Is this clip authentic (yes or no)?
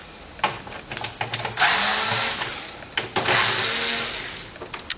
yes